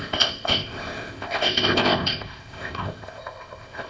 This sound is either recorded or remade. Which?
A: remade